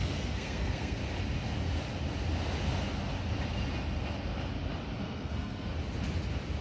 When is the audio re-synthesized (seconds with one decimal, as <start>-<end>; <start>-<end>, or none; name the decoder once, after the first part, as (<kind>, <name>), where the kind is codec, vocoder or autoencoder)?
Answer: 0.0-1.0 (codec, SNAC); 5.0-5.7